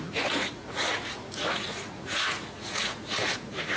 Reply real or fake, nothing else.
fake